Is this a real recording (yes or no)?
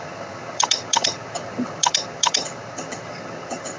no